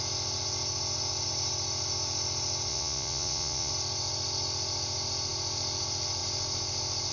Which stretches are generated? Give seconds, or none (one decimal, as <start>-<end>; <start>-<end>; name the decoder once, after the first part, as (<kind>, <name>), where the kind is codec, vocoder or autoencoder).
2.7-3.7 (vocoder, Vocos)